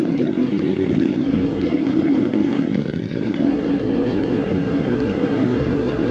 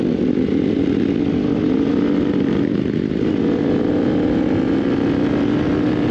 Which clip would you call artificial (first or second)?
first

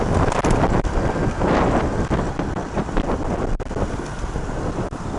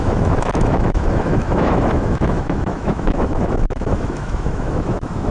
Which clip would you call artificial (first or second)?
second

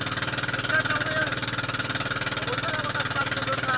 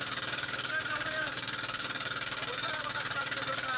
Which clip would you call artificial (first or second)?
second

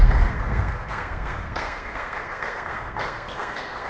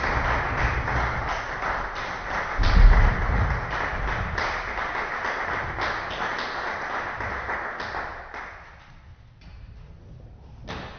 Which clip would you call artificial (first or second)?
first